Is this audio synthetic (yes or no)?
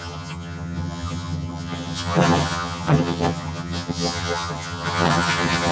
yes